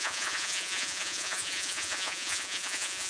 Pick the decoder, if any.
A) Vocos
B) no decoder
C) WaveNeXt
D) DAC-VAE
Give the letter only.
A